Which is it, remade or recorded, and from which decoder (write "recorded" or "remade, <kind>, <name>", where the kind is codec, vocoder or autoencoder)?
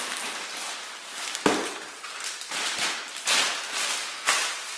recorded